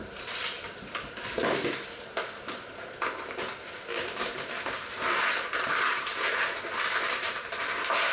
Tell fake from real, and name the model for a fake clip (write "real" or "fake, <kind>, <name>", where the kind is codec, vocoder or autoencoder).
fake, vocoder, BigVGAN v2